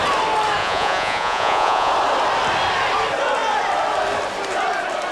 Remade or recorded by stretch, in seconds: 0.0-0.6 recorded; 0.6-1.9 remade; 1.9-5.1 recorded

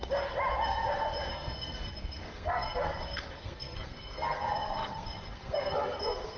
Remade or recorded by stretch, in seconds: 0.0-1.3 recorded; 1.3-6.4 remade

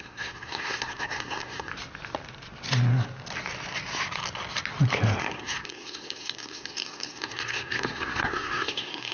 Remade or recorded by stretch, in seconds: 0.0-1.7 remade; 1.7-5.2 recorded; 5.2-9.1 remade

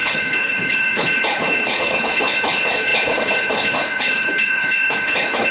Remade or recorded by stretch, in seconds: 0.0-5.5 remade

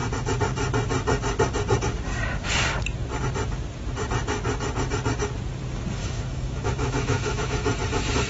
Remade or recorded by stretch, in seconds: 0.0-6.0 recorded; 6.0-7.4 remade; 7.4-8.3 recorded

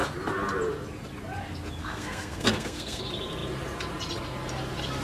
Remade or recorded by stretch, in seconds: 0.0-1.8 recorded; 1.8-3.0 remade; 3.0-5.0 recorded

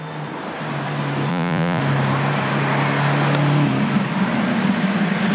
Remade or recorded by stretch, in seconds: 0.0-1.3 recorded; 1.3-1.8 remade; 1.8-5.3 recorded

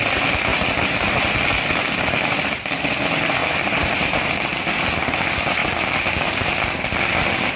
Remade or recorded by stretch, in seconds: 0.0-3.4 recorded; 3.4-4.3 remade; 4.3-5.6 recorded; 5.6-7.6 remade